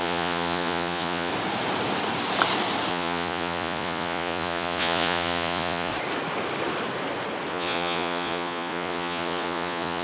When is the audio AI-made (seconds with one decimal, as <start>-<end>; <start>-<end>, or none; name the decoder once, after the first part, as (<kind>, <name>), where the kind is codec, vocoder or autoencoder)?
0.0-1.3 (vocoder, Vocos); 2.9-5.9; 7.5-10.0